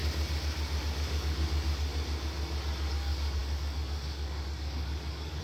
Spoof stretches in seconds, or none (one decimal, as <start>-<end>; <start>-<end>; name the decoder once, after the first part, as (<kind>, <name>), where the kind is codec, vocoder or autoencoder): 0.8-1.9 (codec, DAC); 2.9-5.4